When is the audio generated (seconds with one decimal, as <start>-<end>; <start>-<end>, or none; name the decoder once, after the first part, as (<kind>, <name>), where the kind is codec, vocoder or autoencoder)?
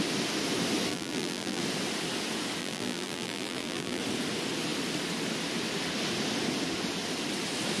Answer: 0.9-1.6 (vocoder, BigVGAN v2); 2.6-4.0